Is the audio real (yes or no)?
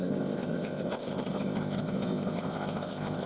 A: no